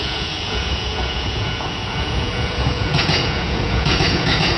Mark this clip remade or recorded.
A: remade